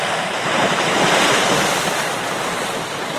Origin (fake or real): fake